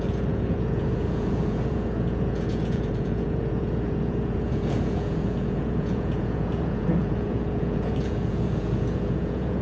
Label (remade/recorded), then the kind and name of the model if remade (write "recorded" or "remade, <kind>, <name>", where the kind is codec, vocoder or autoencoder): remade, vocoder, Vocos